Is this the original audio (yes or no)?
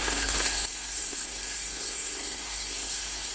no